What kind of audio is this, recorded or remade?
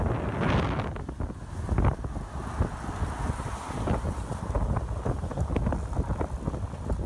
recorded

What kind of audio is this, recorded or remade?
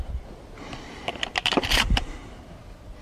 recorded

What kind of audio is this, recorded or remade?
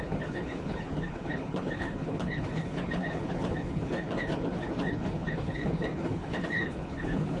remade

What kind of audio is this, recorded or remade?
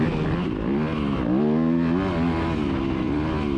recorded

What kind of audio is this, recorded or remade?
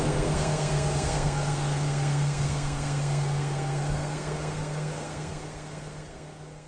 remade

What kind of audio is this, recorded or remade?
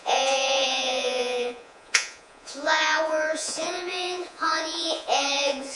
remade